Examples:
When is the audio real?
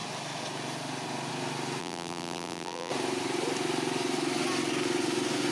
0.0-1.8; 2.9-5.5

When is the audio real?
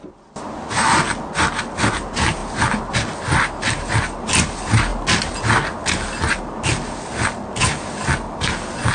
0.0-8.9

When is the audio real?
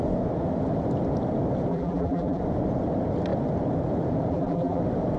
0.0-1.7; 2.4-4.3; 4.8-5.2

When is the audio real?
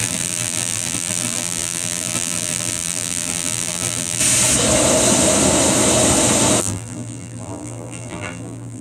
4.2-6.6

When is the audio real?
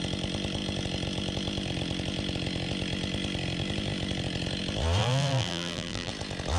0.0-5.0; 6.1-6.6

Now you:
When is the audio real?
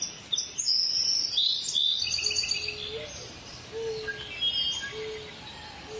0.0-0.8; 1.6-2.4; 2.9-6.0